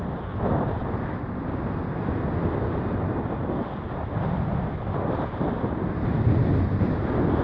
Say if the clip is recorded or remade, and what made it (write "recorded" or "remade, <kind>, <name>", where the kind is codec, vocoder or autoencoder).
recorded